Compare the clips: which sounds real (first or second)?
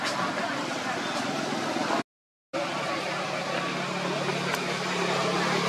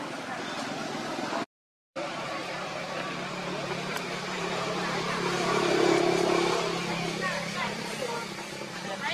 first